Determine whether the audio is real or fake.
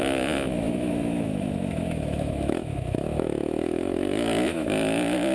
fake